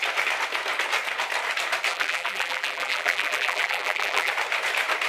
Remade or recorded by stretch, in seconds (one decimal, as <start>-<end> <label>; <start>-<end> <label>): 0.0-1.9 recorded; 1.9-4.3 remade; 4.3-5.1 recorded